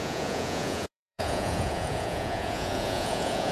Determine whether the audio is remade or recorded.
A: remade